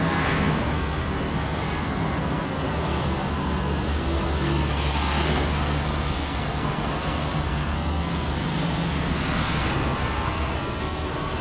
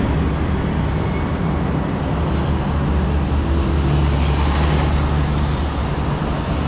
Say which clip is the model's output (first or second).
first